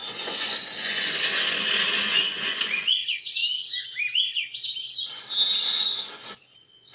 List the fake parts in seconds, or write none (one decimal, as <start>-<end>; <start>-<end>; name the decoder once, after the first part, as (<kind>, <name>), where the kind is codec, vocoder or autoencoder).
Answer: 0.0-3.4 (vocoder, Vocos); 5.6-6.9